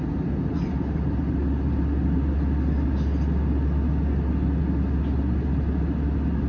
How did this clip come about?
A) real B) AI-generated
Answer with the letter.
A